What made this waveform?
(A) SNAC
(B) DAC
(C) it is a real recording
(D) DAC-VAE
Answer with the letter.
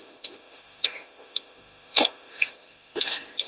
D